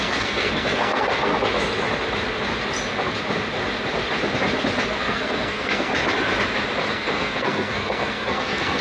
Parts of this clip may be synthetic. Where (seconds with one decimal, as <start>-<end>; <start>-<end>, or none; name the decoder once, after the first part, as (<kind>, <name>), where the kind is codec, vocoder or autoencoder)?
0.0-1.3 (codec, SNAC); 5.0-5.9; 6.8-8.8